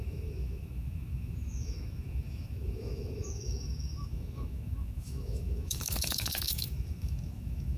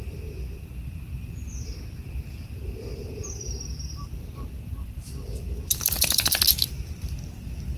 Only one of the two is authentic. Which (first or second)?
second